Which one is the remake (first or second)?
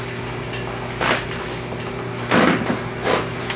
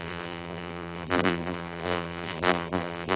second